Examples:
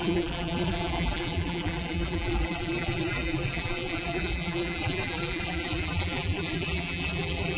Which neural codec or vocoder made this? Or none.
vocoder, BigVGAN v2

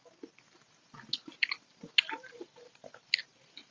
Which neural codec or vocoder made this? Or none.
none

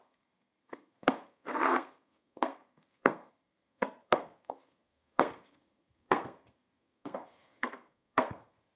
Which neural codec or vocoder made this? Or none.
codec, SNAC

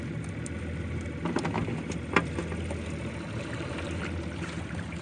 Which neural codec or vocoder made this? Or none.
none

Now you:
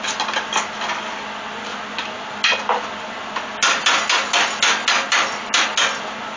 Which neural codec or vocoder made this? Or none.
none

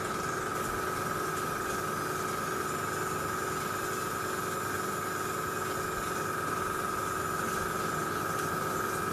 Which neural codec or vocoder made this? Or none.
none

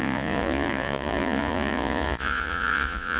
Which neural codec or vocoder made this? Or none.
vocoder, Vocos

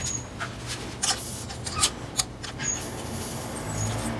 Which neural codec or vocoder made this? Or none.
none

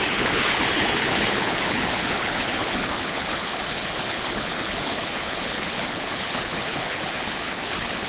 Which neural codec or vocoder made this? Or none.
codec, HILCodec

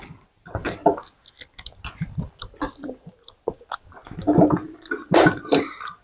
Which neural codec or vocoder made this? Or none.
none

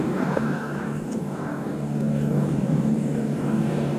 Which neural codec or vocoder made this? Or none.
codec, DAC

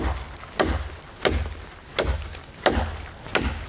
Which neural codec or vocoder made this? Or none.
none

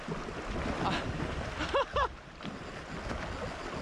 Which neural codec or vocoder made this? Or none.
none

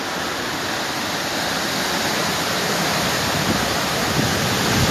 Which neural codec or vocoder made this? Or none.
none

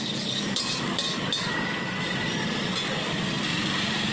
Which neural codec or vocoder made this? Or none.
none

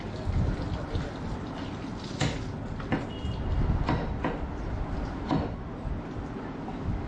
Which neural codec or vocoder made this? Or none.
none